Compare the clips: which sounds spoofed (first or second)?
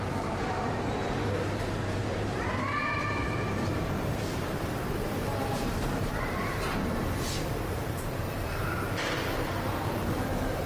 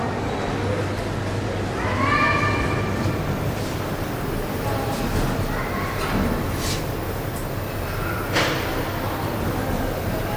first